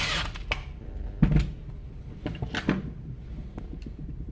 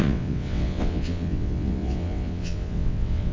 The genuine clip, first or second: first